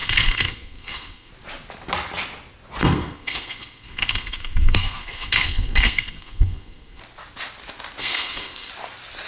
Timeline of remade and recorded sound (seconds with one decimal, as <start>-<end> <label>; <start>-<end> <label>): 0.0-1.3 remade; 1.3-2.8 recorded; 2.8-7.0 remade; 7.0-8.0 recorded; 8.0-8.7 remade; 8.7-9.3 recorded